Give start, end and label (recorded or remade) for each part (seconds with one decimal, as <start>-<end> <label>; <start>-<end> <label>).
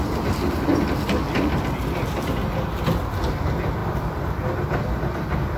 0.0-5.6 recorded